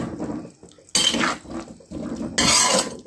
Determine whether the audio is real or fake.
real